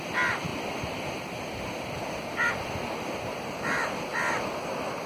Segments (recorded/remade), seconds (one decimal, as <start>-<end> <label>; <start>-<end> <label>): 0.0-5.1 recorded